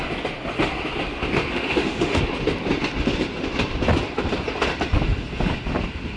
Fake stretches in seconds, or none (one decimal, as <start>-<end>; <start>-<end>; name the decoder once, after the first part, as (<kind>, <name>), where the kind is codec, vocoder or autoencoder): 1.5-2.2 (autoencoder, DAC-VAE)